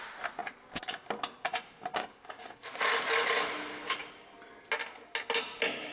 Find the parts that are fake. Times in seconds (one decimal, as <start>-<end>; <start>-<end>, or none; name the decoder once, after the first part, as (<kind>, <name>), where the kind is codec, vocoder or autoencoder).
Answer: 2.0-2.7 (codec, DAC)